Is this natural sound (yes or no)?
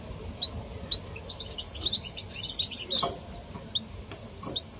yes